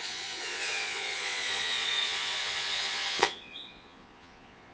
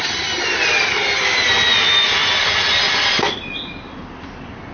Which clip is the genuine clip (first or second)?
second